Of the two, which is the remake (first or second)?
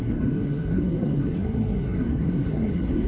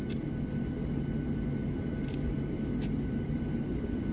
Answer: first